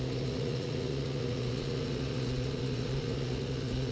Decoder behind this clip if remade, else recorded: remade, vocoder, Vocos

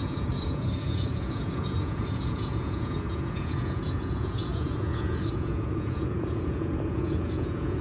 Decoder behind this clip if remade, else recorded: remade, vocoder, Vocos